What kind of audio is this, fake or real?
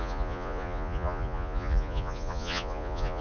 fake